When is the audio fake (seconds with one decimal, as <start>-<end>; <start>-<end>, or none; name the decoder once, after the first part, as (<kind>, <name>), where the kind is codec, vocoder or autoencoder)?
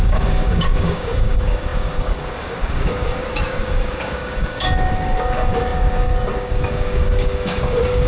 0.0-8.1 (codec, DAC)